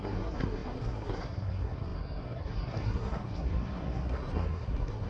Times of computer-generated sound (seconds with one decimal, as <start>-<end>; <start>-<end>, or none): 0.0-5.1